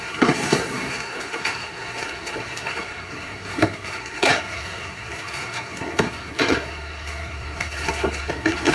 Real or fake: fake